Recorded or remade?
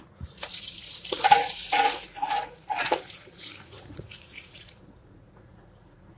remade